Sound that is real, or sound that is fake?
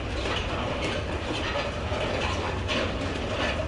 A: real